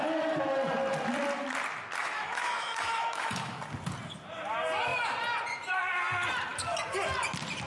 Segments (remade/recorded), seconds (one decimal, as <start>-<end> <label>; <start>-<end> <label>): 0.0-2.0 recorded; 2.0-3.6 remade; 3.6-7.7 recorded